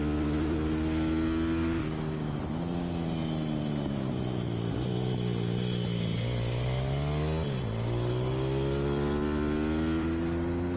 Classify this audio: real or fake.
real